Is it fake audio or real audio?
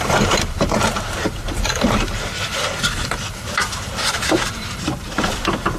fake